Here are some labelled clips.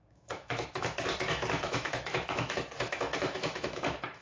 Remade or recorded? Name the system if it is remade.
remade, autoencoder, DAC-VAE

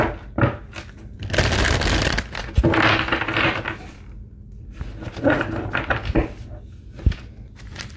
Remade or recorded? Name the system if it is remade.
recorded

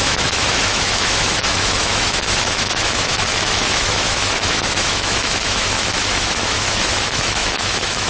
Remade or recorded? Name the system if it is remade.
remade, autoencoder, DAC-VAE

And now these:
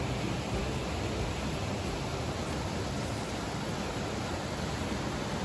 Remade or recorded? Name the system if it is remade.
recorded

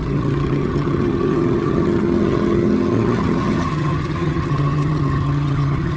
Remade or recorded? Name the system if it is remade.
remade, vocoder, HiFi-GAN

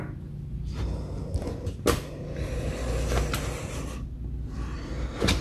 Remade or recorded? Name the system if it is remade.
recorded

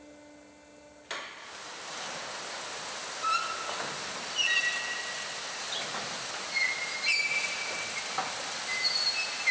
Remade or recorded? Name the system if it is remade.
recorded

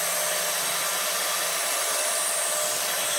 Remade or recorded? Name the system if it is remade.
recorded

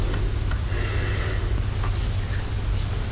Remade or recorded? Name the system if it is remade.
recorded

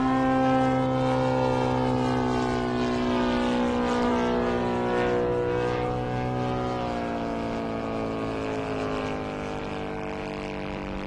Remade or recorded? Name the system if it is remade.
recorded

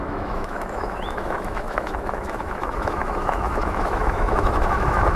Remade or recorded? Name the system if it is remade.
remade, autoencoder, DAC-VAE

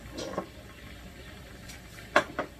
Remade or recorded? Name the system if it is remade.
remade, vocoder, BigVGAN v2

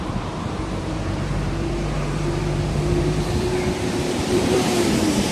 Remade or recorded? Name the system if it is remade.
remade, vocoder, BigVGAN v2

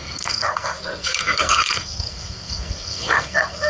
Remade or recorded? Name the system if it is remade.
remade, codec, SNAC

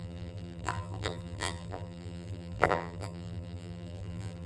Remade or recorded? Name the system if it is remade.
remade, vocoder, BigVGAN v2